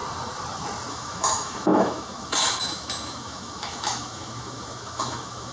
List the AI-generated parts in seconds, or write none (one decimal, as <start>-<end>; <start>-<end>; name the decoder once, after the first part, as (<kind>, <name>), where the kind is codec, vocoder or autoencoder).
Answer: 0.9-5.5 (autoencoder, DAC-VAE)